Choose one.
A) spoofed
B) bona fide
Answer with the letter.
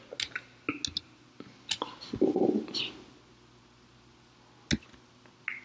B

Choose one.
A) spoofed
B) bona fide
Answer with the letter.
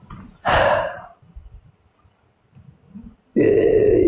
B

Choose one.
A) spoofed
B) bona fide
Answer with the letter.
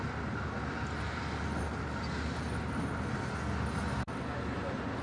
B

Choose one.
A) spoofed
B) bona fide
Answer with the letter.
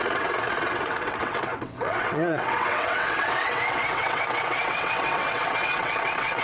A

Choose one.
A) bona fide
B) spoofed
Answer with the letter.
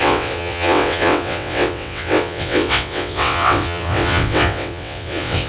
B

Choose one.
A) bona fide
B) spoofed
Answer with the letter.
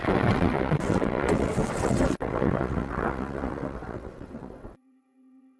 B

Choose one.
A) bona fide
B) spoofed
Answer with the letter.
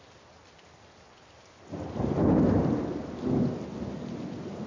A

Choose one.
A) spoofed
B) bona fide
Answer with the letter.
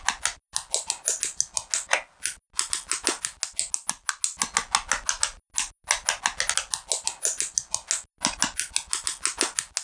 B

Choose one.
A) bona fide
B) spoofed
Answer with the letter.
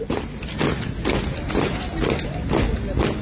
A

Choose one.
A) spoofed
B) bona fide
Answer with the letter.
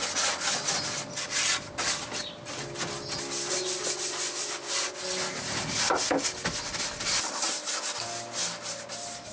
B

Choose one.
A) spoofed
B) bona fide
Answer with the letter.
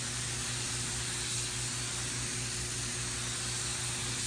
B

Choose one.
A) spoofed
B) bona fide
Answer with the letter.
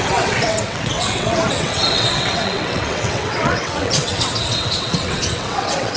A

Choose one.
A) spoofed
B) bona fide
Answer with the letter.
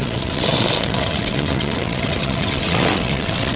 A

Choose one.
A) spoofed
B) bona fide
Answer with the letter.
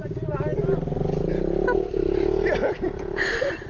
B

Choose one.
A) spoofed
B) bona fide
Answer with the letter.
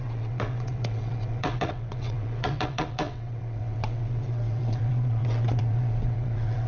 A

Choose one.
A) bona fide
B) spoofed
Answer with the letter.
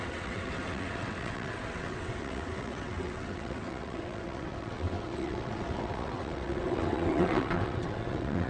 B